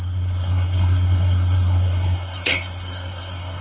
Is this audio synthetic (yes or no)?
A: yes